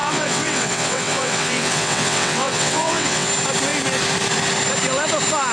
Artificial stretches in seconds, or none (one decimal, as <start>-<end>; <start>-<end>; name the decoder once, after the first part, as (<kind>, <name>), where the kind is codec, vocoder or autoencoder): 0.0-3.3 (vocoder, WaveNeXt)